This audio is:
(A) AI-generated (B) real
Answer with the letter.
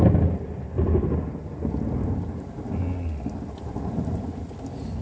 B